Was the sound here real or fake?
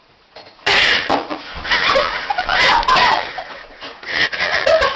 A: fake